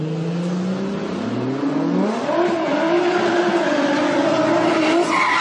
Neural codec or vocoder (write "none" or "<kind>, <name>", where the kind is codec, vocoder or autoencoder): none